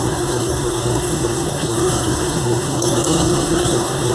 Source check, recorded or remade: remade